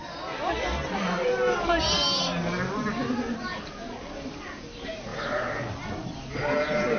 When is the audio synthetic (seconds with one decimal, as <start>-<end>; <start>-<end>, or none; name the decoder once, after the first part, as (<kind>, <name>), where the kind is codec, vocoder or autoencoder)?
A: none